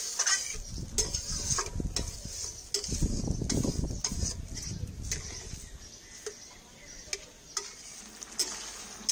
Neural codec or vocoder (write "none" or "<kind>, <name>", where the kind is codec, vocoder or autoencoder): none